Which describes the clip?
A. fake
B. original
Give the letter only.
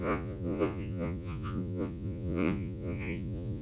A